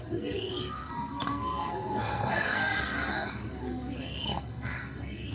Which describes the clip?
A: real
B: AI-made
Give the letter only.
B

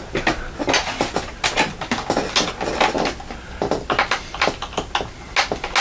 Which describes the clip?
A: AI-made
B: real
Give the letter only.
B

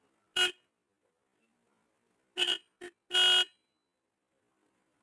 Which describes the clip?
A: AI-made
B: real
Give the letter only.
B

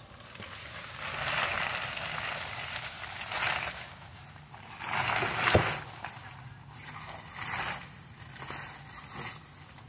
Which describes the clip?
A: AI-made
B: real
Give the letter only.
B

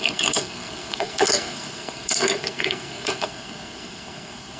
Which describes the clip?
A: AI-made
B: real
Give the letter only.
A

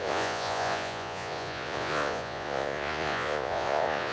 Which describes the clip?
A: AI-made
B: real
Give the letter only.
A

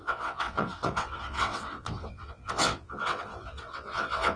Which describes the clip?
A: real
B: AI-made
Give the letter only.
B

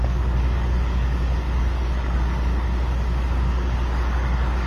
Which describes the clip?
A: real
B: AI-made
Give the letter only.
B